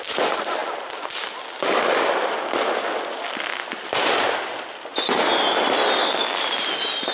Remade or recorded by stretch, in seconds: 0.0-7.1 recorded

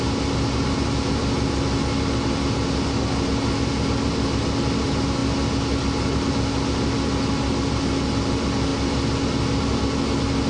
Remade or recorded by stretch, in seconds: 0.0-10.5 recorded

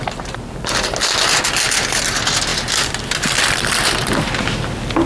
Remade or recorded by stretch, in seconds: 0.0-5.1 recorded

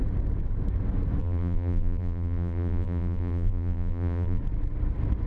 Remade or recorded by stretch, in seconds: 0.0-1.2 recorded; 1.2-4.4 remade; 4.4-5.3 recorded

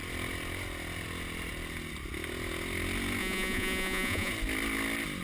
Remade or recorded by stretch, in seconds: 0.0-3.2 recorded; 3.2-4.3 remade; 4.3-5.2 recorded

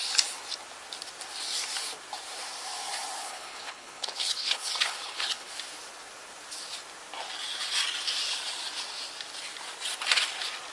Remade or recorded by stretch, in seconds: 0.0-3.2 recorded; 3.2-5.5 remade; 5.5-10.7 recorded

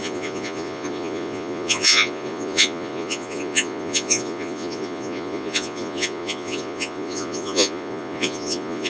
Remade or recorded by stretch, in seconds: 0.0-8.9 remade

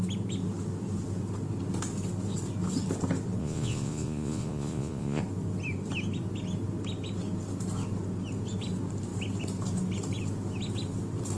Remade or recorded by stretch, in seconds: 0.0-3.4 recorded; 3.4-5.2 remade; 5.2-11.4 recorded